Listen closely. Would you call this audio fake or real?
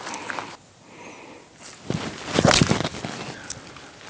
real